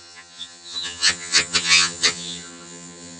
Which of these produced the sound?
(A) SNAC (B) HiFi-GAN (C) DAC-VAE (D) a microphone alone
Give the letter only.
B